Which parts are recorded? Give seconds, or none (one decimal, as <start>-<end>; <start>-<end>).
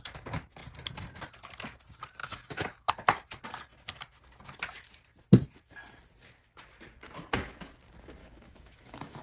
0.0-2.2; 2.9-8.2